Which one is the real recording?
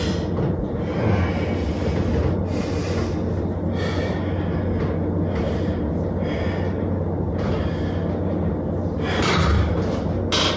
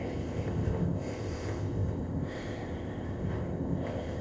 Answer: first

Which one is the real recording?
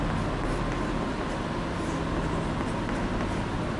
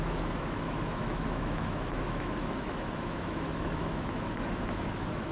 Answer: first